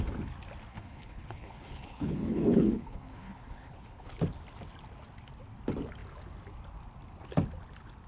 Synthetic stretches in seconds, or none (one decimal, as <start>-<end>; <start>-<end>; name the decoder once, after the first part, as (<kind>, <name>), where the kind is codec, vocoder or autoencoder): 0.7-4.2 (codec, HILCodec)